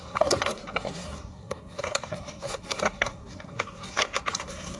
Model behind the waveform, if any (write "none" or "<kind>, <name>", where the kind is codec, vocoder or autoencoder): codec, SNAC